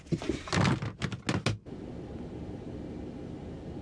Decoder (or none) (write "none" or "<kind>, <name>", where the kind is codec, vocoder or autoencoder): none